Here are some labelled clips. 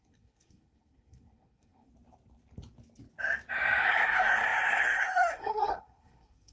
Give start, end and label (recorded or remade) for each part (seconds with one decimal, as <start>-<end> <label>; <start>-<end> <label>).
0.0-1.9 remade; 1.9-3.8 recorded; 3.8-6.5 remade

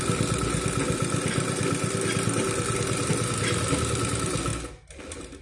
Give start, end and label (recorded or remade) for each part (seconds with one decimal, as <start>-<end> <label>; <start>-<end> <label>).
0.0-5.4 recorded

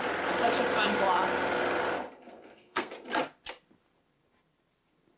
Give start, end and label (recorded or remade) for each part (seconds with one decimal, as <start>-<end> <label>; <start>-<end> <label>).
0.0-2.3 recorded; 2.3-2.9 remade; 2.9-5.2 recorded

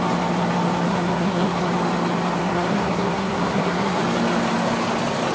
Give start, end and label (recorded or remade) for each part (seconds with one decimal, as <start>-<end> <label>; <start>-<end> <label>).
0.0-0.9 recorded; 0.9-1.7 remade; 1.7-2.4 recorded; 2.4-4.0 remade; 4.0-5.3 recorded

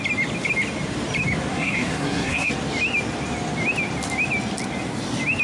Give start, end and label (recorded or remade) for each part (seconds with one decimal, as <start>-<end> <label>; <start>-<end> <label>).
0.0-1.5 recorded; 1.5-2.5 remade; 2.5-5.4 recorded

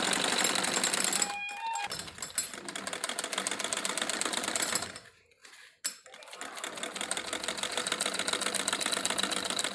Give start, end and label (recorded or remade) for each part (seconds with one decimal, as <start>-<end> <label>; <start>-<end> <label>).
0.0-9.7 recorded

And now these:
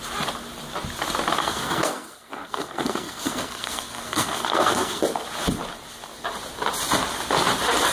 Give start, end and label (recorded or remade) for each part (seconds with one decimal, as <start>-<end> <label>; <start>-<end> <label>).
0.0-1.4 recorded; 1.4-5.0 remade; 5.0-7.9 recorded

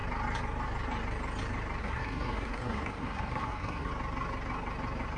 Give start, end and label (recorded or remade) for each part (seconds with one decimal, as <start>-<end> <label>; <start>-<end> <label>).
0.0-1.8 recorded; 1.8-3.9 remade; 3.9-5.2 recorded